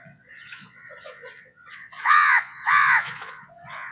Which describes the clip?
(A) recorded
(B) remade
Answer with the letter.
B